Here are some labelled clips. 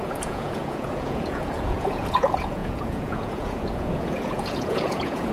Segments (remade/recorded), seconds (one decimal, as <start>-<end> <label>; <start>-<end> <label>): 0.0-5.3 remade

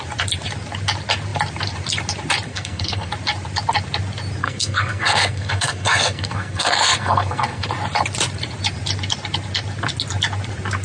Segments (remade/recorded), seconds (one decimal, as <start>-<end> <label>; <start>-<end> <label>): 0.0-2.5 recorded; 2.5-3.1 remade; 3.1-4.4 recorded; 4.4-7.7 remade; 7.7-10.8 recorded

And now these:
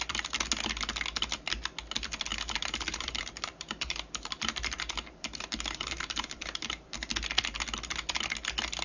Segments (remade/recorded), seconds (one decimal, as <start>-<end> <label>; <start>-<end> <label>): 0.0-2.3 recorded; 2.3-7.1 remade; 7.1-8.8 recorded

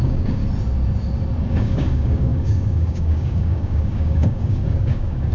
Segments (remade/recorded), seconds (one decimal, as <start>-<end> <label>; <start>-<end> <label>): 0.0-0.4 remade; 0.4-1.5 recorded; 1.5-5.3 remade

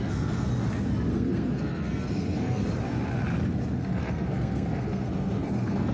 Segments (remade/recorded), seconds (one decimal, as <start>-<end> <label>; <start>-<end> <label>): 0.0-0.5 remade; 0.5-1.1 recorded; 1.1-2.6 remade; 2.6-3.8 recorded; 3.8-5.9 remade